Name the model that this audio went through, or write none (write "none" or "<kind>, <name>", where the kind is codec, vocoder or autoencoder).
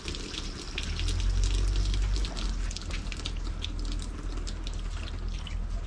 none